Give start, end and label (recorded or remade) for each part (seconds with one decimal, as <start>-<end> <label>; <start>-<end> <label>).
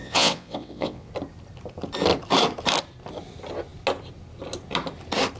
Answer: 0.0-1.1 remade; 1.1-5.4 recorded